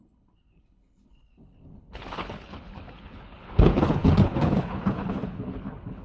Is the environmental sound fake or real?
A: fake